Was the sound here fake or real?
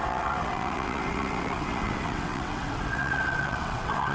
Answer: fake